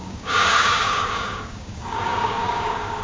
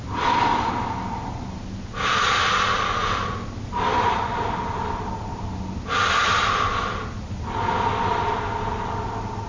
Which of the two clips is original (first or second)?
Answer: second